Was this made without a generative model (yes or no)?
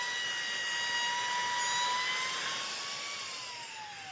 yes